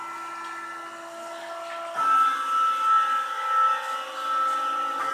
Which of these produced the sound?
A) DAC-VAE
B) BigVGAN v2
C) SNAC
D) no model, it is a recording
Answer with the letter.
D